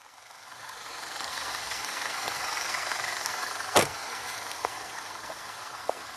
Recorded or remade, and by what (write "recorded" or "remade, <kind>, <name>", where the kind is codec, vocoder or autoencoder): remade, codec, SNAC